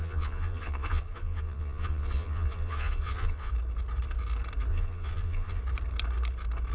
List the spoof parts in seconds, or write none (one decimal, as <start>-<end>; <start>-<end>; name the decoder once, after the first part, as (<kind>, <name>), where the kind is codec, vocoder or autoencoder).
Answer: 0.0-3.5 (vocoder, Vocos); 4.7-5.6